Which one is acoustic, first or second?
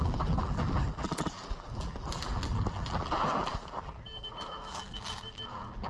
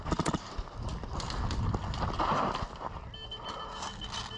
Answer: second